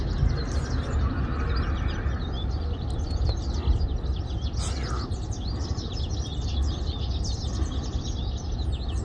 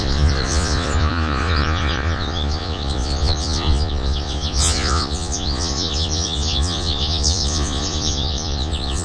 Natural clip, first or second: first